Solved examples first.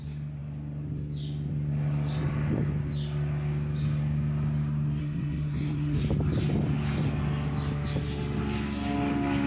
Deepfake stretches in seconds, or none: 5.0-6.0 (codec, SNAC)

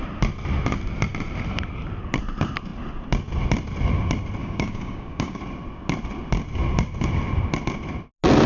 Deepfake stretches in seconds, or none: 4.4-5.4 (codec, DAC)

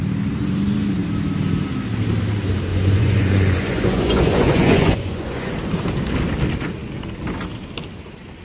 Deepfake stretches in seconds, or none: 2.7-5.5 (vocoder, Vocos)

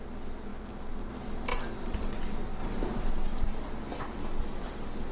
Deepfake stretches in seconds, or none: 1.5-2.1 (vocoder, BigVGAN v2); 2.6-3.1

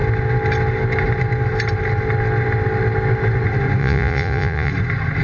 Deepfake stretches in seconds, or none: 3.8-4.7 (vocoder, Vocos)